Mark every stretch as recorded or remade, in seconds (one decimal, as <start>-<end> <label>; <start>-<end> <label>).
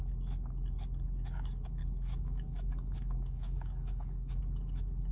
0.0-1.8 recorded; 1.8-4.4 remade; 4.4-5.1 recorded